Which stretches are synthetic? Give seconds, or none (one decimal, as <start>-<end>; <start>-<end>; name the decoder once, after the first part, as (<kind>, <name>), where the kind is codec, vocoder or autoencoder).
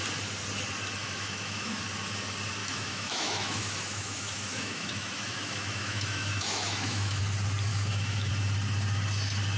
1.0-1.8 (autoencoder, DAC-VAE); 2.6-7.2; 7.7-8.3